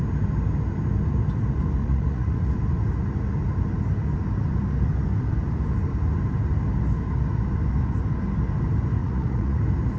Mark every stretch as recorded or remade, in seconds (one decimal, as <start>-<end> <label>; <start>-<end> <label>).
0.0-1.8 recorded; 1.8-2.5 remade; 2.5-9.0 recorded; 9.0-9.6 remade; 9.6-10.0 recorded